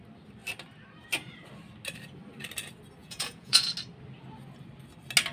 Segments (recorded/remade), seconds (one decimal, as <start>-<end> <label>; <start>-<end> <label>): 0.0-3.0 recorded; 3.0-3.7 remade; 3.7-5.3 recorded